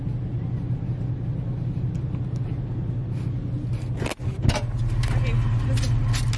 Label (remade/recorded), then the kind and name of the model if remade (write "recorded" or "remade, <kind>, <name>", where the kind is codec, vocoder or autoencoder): recorded